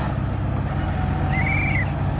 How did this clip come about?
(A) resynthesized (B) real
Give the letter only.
B